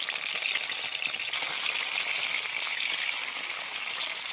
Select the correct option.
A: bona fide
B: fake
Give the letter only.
A